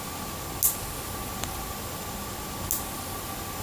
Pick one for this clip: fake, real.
real